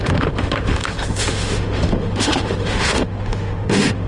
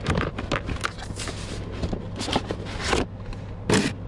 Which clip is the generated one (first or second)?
first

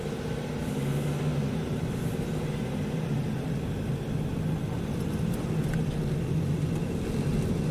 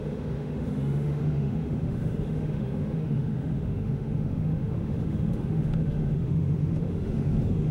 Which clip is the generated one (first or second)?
second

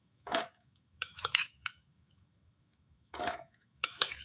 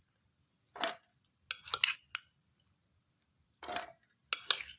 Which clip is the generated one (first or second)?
first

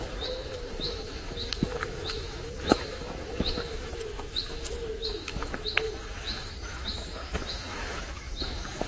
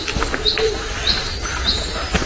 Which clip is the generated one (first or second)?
first